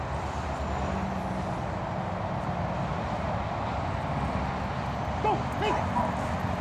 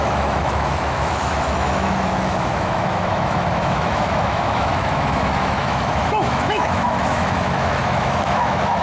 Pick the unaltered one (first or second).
first